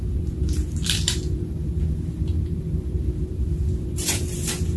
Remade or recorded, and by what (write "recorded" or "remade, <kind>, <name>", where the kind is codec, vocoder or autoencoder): remade, vocoder, BigVGAN v2